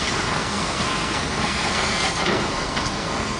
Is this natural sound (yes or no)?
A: no